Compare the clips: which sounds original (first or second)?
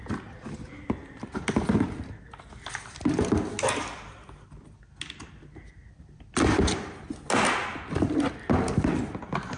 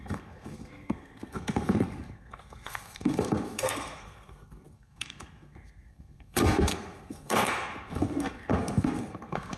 first